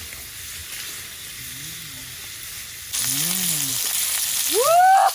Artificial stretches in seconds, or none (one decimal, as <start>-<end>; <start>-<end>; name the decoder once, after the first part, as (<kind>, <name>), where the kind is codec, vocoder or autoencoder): none